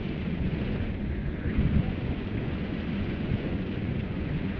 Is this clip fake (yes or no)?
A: yes